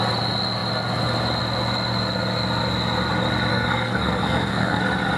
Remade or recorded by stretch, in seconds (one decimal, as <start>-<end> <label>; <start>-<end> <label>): 0.0-3.5 recorded; 3.5-4.8 remade; 4.8-5.2 recorded